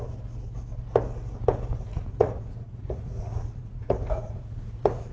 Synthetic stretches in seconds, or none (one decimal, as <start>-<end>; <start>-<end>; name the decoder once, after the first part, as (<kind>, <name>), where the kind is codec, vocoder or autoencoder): 1.7-5.1 (vocoder, Vocos)